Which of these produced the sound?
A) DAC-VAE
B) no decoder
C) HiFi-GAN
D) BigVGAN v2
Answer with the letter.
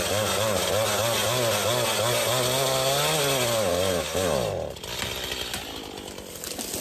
B